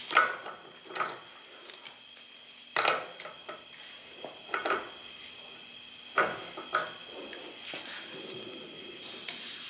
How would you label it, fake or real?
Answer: real